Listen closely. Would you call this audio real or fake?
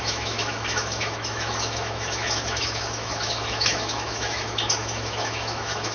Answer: fake